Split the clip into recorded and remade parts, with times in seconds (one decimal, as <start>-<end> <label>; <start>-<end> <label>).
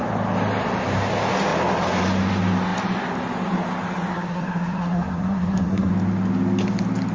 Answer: 0.0-4.1 recorded; 4.1-5.9 remade; 5.9-7.1 recorded